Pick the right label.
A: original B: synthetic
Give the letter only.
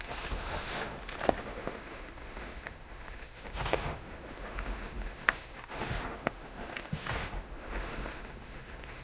B